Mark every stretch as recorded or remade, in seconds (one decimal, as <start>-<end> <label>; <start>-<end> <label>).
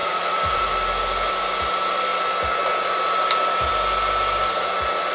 0.0-0.7 remade; 0.7-5.1 recorded